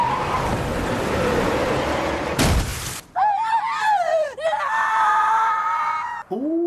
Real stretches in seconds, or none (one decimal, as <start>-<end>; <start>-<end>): none